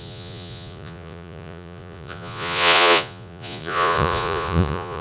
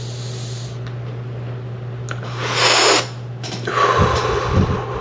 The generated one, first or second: first